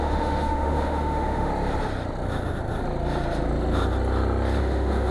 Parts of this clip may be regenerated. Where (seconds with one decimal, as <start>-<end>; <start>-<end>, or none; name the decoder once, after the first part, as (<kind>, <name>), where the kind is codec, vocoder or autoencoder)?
0.0-1.5 (autoencoder, DAC-VAE); 4.6-5.1